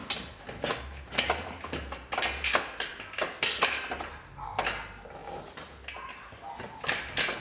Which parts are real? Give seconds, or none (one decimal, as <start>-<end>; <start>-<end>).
0.0-7.4